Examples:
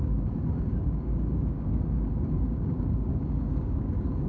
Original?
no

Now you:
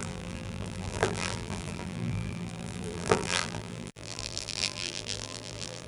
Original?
no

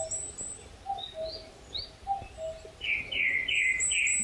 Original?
yes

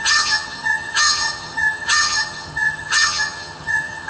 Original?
no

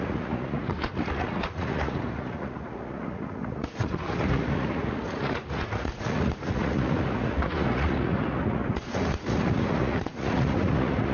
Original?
no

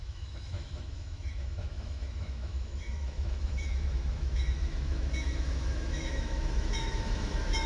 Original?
no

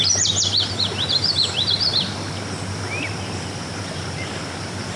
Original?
yes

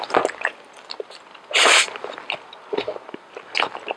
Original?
yes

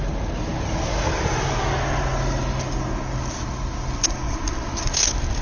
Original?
yes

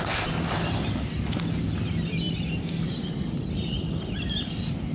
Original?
yes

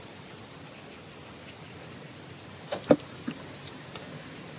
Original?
yes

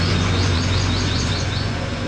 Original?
no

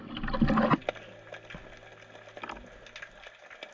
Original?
yes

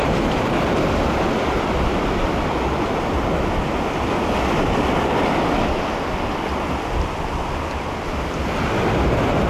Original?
yes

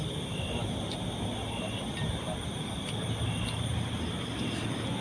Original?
yes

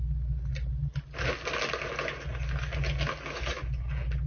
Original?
yes